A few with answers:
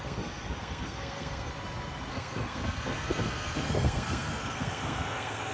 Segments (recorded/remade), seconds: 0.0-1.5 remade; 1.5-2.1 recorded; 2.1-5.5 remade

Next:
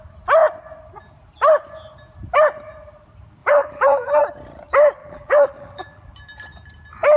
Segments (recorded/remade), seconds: 0.0-3.4 recorded; 3.4-4.2 remade; 4.2-5.0 recorded; 5.0-6.1 remade; 6.1-7.2 recorded

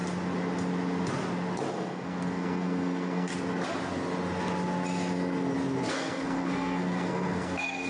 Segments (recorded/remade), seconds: 0.0-1.7 recorded; 1.7-3.3 remade; 3.3-5.9 recorded; 5.9-7.9 remade